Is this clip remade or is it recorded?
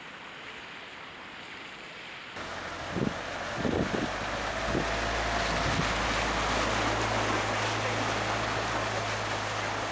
recorded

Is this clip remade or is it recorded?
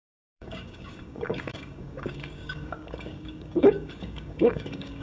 remade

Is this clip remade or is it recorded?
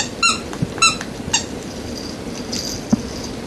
recorded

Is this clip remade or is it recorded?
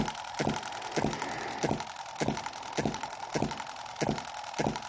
recorded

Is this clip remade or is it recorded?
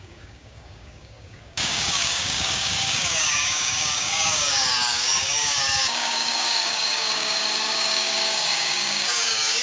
remade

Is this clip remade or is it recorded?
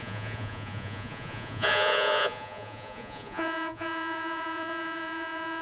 remade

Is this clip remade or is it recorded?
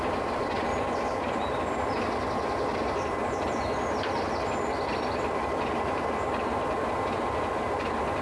remade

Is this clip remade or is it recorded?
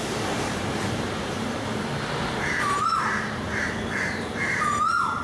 remade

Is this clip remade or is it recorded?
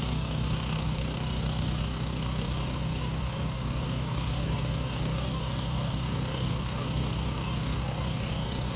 remade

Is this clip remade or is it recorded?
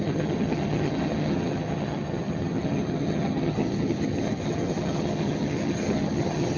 remade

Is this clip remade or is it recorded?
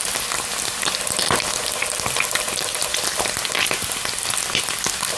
recorded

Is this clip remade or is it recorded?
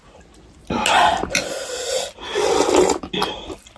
recorded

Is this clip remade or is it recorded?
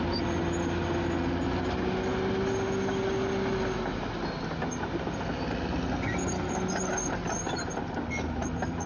recorded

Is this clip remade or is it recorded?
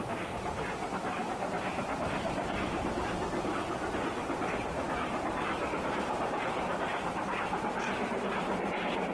recorded